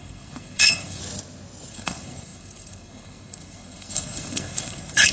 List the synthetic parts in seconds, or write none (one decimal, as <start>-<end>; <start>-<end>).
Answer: 0.0-1.0; 1.7-5.1